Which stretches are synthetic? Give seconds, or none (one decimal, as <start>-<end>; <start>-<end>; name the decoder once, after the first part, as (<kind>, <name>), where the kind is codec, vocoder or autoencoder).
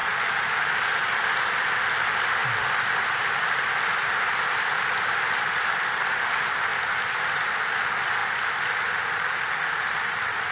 none